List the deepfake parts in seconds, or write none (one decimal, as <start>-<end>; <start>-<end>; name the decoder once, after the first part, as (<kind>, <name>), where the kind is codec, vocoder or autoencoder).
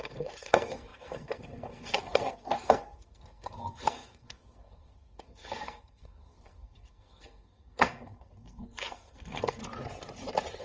0.0-9.6 (codec, SNAC)